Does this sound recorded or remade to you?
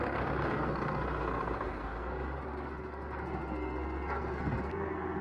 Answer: remade